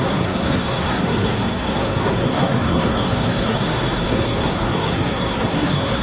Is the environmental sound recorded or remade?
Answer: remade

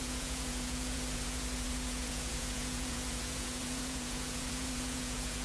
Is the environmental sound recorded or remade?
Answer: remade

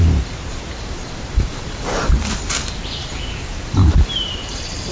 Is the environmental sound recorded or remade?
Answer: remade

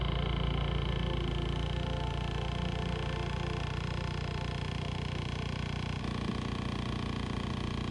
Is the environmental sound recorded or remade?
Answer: recorded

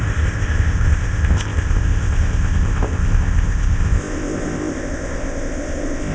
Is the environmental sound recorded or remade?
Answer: remade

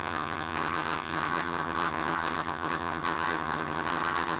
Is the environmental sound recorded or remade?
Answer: remade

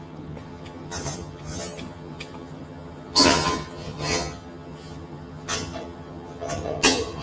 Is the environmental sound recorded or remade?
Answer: remade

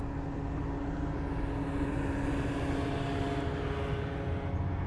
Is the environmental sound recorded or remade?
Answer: recorded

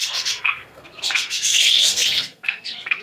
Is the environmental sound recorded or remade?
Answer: remade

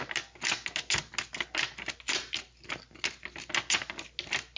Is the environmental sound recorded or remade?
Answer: recorded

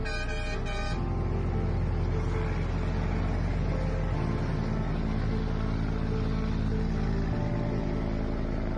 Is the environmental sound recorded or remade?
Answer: recorded